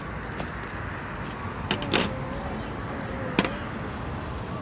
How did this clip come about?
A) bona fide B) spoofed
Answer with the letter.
A